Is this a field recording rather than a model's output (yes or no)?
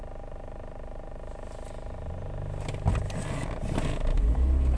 yes